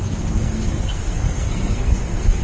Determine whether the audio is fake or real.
fake